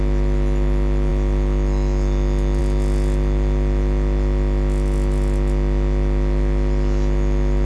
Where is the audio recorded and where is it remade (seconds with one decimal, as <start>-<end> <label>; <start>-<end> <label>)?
0.0-7.6 recorded